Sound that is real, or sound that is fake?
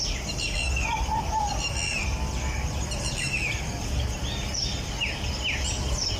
fake